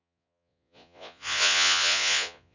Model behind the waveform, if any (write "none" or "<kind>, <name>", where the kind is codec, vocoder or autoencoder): vocoder, Vocos